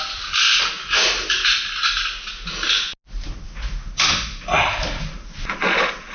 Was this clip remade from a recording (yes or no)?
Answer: no